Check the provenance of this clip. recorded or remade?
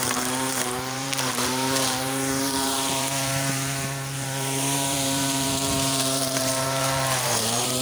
remade